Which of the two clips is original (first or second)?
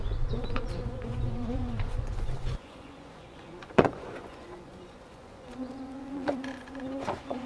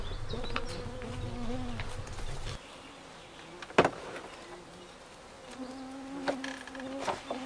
second